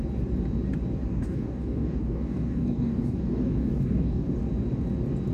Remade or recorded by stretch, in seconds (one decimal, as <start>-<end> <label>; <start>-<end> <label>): 0.0-1.1 recorded; 1.1-4.3 remade; 4.3-5.3 recorded